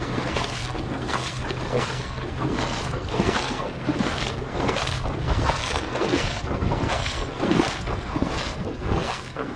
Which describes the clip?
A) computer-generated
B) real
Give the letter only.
A